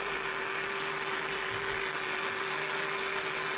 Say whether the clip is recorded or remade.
recorded